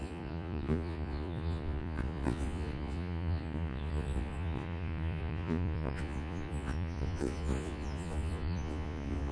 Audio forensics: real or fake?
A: fake